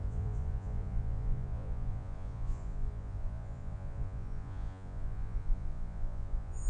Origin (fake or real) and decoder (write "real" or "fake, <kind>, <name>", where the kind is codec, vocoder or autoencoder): fake, vocoder, Vocos